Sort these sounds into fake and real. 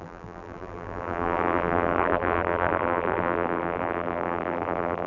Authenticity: fake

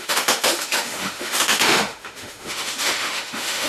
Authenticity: fake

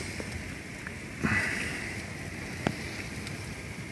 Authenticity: real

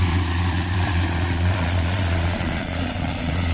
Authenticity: fake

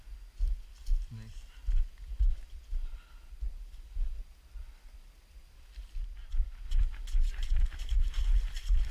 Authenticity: real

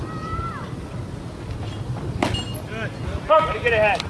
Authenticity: real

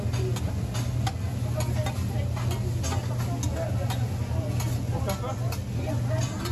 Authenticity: real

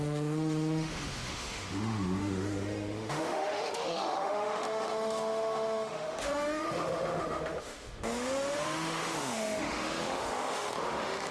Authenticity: fake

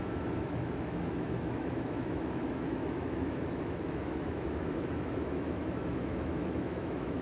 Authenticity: fake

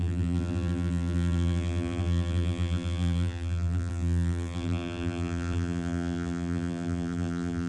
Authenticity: fake